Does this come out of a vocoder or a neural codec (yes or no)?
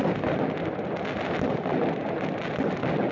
no